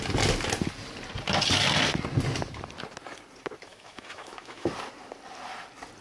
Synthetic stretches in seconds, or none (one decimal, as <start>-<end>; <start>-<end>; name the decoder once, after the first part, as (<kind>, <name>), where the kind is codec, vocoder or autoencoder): 3.7-4.7 (autoencoder, DAC-VAE)